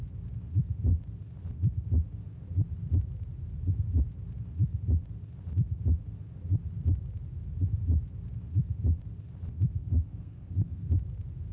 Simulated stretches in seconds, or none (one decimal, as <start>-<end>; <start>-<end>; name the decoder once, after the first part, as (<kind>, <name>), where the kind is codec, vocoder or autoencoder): 9.8-10.9 (codec, SNAC)